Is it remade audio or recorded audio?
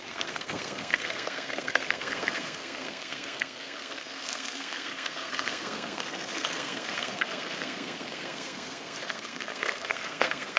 remade